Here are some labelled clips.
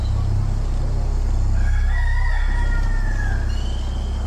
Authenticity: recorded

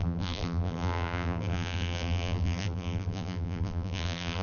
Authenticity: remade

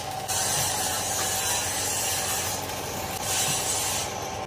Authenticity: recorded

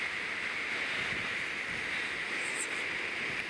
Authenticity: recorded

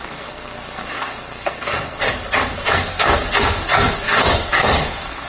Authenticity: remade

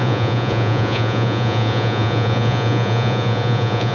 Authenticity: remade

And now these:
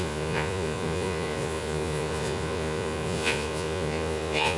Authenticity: remade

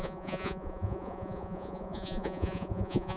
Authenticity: remade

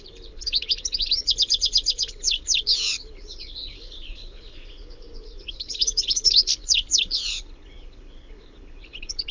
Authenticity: remade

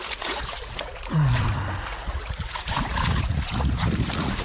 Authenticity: remade